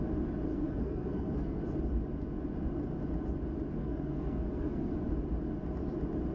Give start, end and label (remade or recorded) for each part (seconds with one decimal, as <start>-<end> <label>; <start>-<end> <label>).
0.0-0.5 recorded; 0.5-1.6 remade; 1.6-3.8 recorded; 3.8-4.9 remade; 4.9-6.3 recorded